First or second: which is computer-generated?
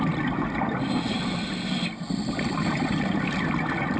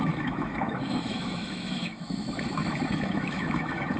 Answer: second